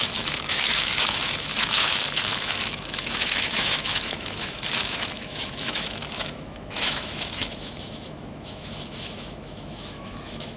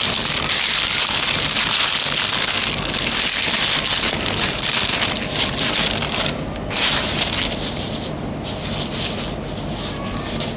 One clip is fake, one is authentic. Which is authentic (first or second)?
second